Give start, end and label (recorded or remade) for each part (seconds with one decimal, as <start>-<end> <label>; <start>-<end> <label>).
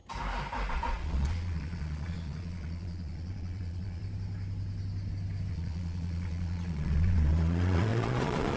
0.0-0.7 recorded; 0.7-4.0 remade; 4.0-5.5 recorded; 5.5-8.6 remade